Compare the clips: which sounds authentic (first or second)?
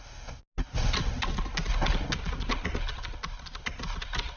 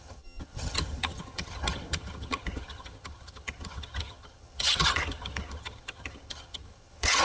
first